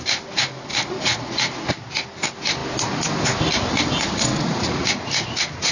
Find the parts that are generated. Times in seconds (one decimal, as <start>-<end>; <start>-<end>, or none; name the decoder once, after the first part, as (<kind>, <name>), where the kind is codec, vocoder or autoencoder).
0.7-1.7 (vocoder, Vocos); 4.3-5.3